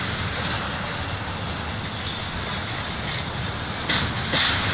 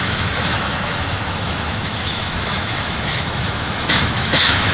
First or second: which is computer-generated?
second